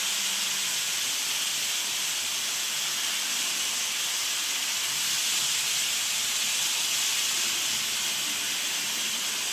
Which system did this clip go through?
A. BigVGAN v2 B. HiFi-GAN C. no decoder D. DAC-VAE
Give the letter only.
C